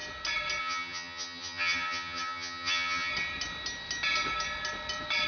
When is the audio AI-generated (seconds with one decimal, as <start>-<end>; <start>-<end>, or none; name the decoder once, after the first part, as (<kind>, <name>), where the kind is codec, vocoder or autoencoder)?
0.6-3.1 (vocoder, HiFi-GAN)

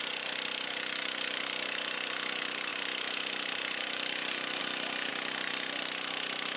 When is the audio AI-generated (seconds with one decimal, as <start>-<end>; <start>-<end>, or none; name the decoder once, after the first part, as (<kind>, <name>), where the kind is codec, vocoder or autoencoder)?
0.0-6.6 (vocoder, BigVGAN v2)

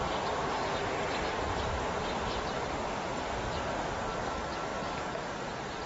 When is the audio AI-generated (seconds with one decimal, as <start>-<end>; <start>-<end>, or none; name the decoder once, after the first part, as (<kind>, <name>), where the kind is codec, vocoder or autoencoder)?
none

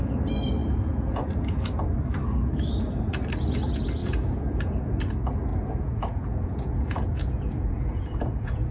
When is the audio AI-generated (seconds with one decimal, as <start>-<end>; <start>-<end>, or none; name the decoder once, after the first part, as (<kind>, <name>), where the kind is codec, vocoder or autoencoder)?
0.6-1.7 (vocoder, Vocos); 4.0-5.0; 5.5-8.7

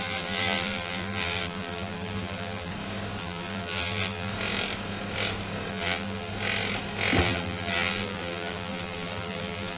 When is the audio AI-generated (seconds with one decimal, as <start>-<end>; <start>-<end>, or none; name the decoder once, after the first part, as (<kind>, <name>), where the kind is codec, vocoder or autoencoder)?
0.0-2.7 (vocoder, BigVGAN v2); 3.2-4.3; 5.7-6.3; 7.2-9.8